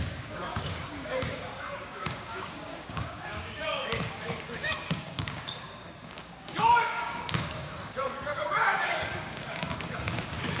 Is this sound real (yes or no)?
no